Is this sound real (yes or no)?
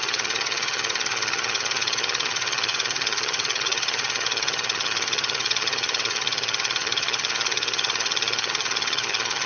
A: no